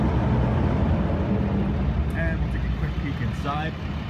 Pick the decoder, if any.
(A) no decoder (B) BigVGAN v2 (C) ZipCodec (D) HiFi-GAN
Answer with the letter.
A